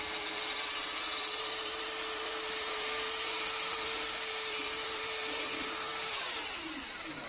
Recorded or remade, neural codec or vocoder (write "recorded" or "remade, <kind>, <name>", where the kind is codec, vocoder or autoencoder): remade, vocoder, BigVGAN v2